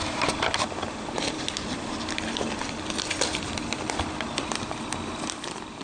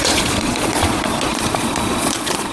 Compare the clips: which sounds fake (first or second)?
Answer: second